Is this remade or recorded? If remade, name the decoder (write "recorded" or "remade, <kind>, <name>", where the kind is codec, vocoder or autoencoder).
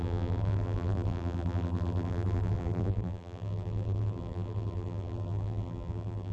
remade, vocoder, BigVGAN v2